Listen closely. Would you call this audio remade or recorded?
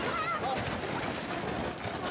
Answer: recorded